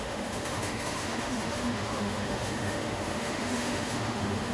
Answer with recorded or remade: remade